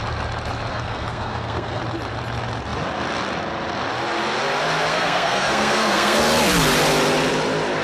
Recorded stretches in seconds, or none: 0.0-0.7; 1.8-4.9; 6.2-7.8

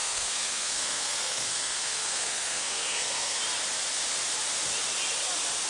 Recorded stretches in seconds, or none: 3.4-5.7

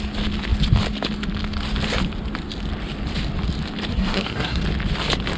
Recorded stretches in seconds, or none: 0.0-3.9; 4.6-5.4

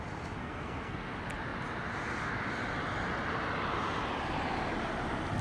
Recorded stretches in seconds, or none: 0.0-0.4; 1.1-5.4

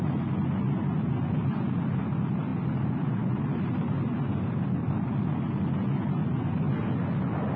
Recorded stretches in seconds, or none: 0.0-7.6

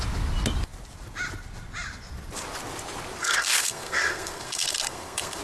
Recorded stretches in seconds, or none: 0.0-3.2